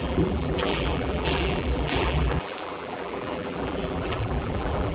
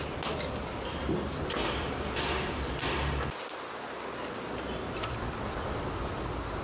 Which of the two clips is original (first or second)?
second